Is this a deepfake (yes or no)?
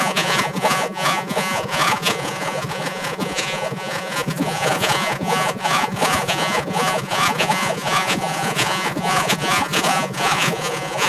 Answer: yes